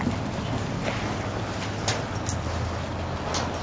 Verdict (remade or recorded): recorded